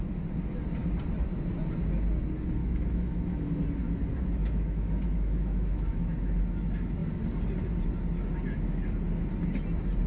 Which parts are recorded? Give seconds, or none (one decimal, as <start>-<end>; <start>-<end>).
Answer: 0.0-2.6; 3.6-4.4; 6.4-10.1

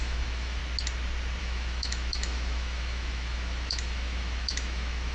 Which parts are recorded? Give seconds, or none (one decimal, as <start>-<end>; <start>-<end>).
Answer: 0.6-1.4